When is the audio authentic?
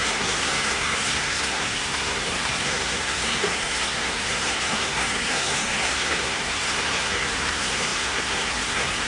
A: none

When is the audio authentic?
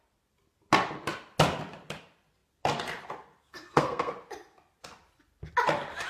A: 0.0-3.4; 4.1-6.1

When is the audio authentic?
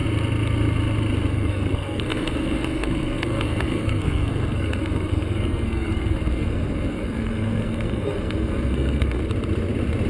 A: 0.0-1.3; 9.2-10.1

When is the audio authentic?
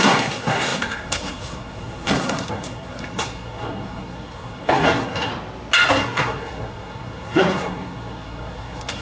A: 5.3-5.9